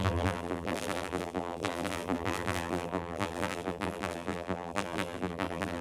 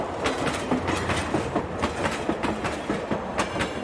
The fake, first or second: first